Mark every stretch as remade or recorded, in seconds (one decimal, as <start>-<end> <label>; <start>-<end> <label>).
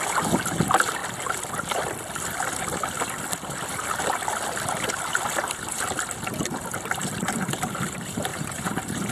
0.0-7.0 recorded; 7.0-7.6 remade; 7.6-8.3 recorded; 8.3-9.1 remade